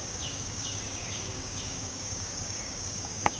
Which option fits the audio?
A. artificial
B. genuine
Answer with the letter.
A